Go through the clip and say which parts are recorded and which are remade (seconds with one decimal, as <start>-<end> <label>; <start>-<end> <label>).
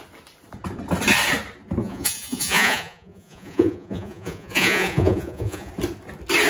0.0-1.8 recorded; 1.8-5.7 remade; 5.7-6.5 recorded